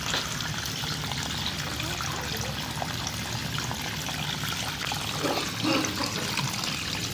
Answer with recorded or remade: recorded